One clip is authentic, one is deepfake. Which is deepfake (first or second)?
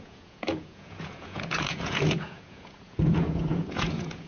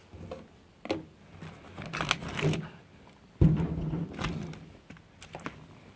first